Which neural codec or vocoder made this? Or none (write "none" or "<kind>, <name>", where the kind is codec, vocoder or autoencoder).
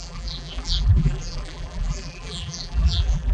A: vocoder, BigVGAN v2